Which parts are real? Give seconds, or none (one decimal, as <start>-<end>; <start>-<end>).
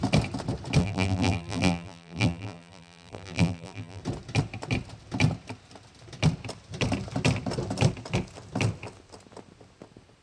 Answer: 0.0-0.8; 4.0-10.2